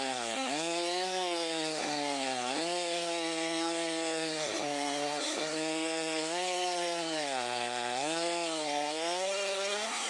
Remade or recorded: remade